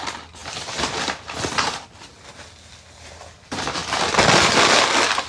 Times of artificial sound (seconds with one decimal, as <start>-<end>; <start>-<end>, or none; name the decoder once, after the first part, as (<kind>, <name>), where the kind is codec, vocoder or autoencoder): none